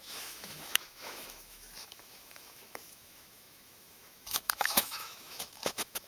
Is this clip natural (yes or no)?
no